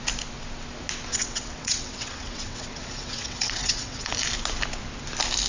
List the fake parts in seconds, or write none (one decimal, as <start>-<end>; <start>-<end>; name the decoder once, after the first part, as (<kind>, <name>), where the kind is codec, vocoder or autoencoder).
1.1-4.1 (vocoder, WaveNeXt)